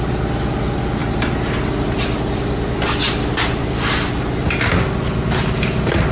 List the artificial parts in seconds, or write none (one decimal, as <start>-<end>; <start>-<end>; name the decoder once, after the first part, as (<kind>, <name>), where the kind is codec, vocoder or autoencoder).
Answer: none